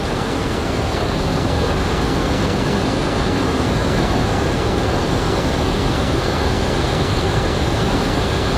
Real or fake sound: fake